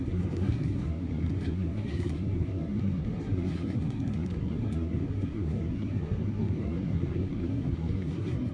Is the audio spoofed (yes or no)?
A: yes